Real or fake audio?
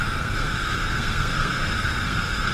fake